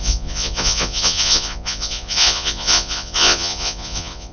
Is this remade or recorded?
remade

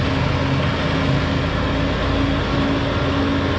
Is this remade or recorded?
recorded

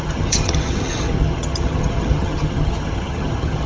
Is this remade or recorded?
remade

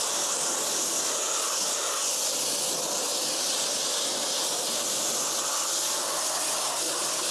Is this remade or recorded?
recorded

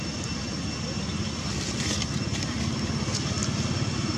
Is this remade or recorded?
recorded